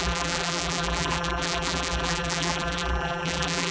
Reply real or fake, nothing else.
fake